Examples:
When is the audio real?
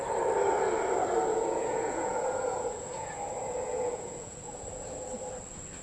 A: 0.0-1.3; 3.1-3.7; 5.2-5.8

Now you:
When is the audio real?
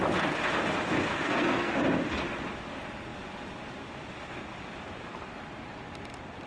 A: 0.0-1.1; 1.7-6.5